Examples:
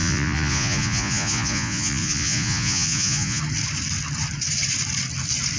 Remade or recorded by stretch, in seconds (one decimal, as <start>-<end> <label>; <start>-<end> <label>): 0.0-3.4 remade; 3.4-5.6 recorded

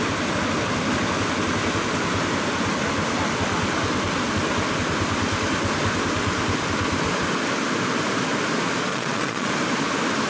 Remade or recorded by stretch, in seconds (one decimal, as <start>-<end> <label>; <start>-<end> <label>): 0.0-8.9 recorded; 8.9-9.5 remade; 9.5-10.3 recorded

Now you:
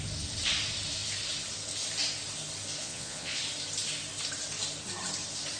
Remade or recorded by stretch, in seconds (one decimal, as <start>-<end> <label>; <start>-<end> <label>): 0.0-2.8 recorded; 2.8-3.4 remade; 3.4-5.6 recorded

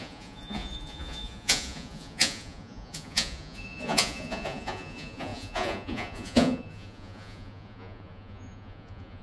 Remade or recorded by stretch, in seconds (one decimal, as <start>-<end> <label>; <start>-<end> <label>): 0.0-9.2 remade

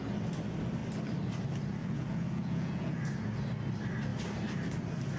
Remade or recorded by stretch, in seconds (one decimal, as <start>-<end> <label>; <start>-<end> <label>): 0.0-1.8 recorded; 1.8-3.0 remade; 3.0-5.2 recorded